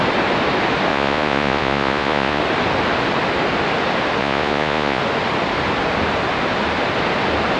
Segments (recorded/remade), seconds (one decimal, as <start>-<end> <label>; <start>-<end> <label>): 0.0-0.9 recorded; 0.9-2.4 remade; 2.4-4.2 recorded; 4.2-5.0 remade; 5.0-7.6 recorded